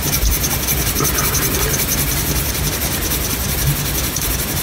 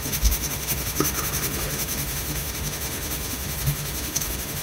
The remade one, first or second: second